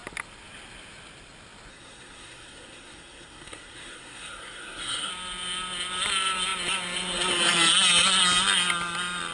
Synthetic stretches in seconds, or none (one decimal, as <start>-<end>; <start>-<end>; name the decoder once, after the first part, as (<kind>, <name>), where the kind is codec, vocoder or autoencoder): 1.7-5.1 (codec, SNAC)